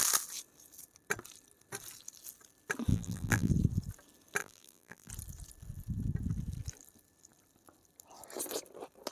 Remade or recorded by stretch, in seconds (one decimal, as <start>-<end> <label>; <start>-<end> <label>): 0.0-2.9 recorded; 2.9-3.5 remade; 3.5-4.4 recorded; 4.4-5.1 remade; 5.1-9.1 recorded

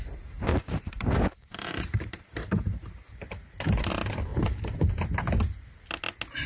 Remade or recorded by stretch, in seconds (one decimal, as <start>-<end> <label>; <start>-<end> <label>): 0.0-0.5 recorded; 0.5-3.9 remade; 3.9-4.3 recorded; 4.3-4.9 remade; 4.9-6.5 recorded

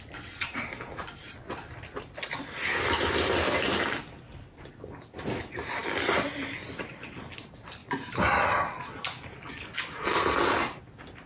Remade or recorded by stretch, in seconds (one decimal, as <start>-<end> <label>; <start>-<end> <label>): 0.0-11.3 recorded

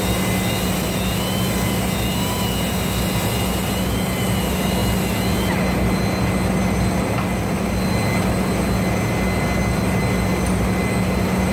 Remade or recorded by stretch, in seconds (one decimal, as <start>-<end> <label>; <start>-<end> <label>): 0.0-11.5 recorded